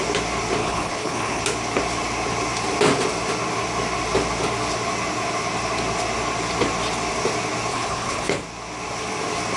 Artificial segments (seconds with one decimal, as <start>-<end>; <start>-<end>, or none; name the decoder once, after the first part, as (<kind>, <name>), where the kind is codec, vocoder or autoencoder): 0.6-1.4 (codec, HILCodec); 7.7-8.3

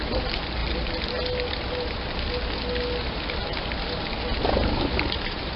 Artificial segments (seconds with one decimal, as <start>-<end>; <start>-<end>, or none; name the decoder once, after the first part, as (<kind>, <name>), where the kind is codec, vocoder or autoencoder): none

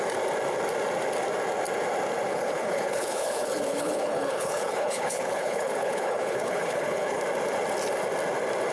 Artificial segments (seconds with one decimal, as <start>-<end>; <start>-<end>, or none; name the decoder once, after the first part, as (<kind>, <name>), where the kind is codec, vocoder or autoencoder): 2.3-7.2 (codec, HILCodec)

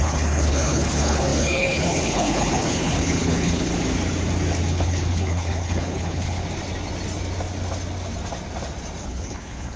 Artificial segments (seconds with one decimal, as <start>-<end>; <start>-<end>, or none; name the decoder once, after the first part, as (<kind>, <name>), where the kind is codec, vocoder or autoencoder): 0.0-3.7 (codec, HILCodec); 4.7-6.4; 9.0-9.8

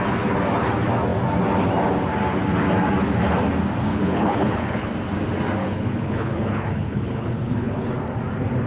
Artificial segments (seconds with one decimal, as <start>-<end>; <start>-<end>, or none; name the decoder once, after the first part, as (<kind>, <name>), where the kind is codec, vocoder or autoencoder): 3.9-4.9 (codec, HILCodec); 5.6-7.9